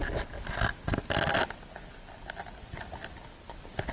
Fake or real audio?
real